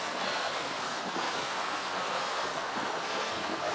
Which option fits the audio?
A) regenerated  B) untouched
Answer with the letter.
A